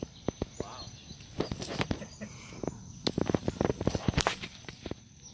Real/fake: real